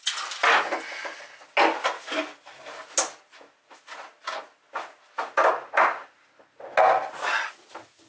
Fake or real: real